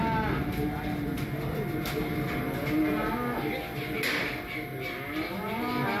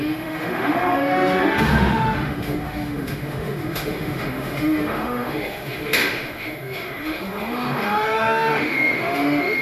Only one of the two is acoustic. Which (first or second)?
first